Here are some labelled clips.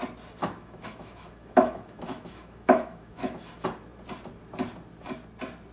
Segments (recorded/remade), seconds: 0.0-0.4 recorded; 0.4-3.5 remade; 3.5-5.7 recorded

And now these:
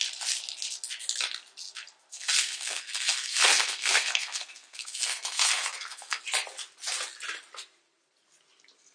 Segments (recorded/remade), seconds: 0.0-2.1 recorded; 2.1-6.2 remade; 6.2-8.9 recorded